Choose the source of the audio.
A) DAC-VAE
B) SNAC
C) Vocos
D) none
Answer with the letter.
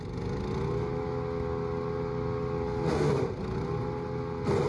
D